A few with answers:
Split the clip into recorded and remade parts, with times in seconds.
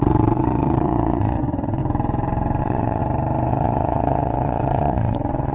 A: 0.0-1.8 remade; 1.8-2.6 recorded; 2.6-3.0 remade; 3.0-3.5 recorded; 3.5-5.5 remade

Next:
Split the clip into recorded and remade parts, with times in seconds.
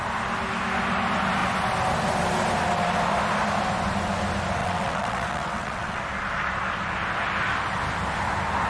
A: 0.0-4.6 recorded; 4.6-6.0 remade; 6.0-8.7 recorded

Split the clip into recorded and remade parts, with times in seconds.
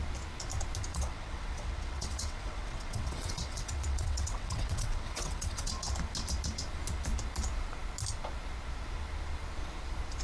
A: 0.0-0.9 recorded; 0.9-5.7 remade; 5.7-10.2 recorded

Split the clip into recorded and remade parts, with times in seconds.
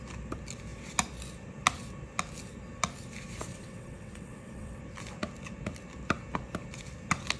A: 0.0-3.5 recorded; 3.5-4.8 remade; 4.8-7.4 recorded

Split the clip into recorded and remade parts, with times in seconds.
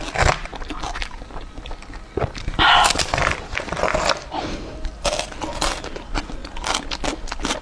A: 0.0-7.6 recorded